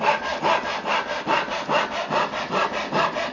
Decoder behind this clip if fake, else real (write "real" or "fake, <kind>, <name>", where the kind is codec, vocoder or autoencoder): real